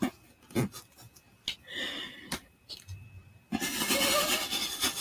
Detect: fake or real real